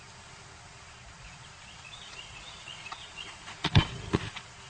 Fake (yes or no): yes